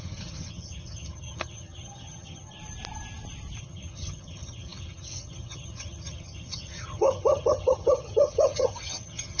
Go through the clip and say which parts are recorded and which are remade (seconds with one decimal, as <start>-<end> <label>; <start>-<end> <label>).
0.0-2.6 remade; 2.6-3.6 recorded; 3.6-9.4 remade